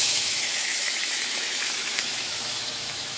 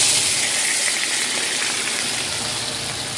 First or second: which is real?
second